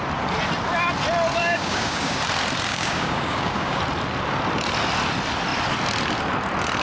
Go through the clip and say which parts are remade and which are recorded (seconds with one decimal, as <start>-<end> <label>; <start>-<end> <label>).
0.0-1.4 recorded; 1.4-2.2 remade; 2.2-2.7 recorded; 2.7-3.8 remade; 3.8-6.8 recorded